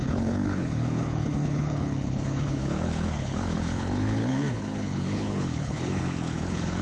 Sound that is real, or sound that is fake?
fake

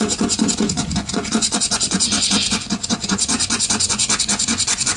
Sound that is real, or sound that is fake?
fake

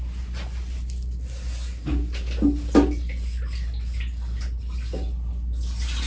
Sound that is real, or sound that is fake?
real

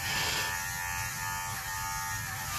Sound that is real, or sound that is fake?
real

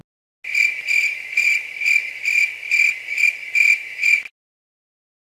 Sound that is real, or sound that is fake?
real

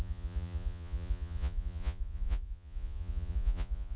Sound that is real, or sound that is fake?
fake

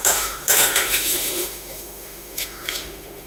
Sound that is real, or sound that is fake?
fake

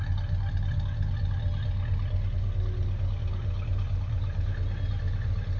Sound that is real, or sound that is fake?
real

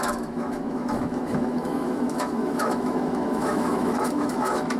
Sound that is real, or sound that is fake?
fake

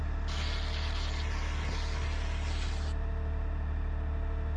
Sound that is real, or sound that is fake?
real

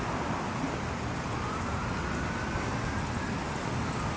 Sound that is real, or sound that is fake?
real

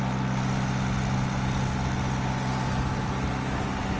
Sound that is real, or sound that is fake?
real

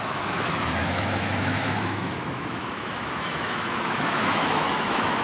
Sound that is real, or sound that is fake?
fake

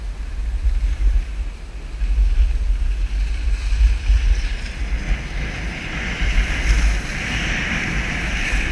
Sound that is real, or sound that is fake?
real